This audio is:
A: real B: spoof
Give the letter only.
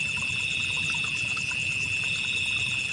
A